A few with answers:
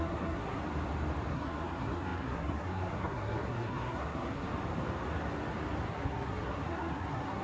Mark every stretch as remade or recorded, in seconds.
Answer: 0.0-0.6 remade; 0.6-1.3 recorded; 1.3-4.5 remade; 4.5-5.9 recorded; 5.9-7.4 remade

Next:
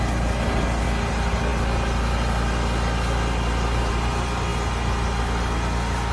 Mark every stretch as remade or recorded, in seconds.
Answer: 0.0-6.1 recorded

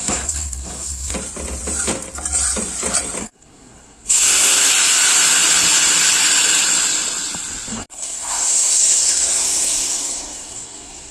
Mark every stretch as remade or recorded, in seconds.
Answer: 0.0-1.1 remade; 1.1-3.2 recorded; 3.2-4.7 remade; 4.7-7.7 recorded; 7.7-11.1 remade

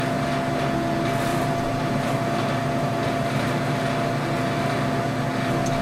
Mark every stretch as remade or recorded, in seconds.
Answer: 0.0-1.3 recorded; 1.3-3.8 remade; 3.8-5.8 recorded

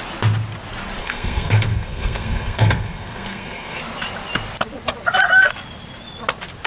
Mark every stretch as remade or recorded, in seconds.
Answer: 0.0-1.0 recorded; 1.0-3.8 remade; 3.8-6.7 recorded

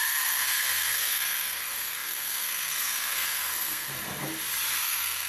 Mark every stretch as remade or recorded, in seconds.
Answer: 0.0-3.9 remade; 3.9-4.8 recorded; 4.8-5.3 remade

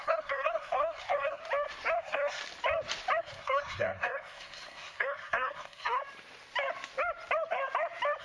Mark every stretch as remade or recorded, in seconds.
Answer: 0.0-1.4 remade; 1.4-2.0 recorded; 2.0-2.4 remade; 2.4-3.2 recorded; 3.2-6.0 remade; 6.0-8.2 recorded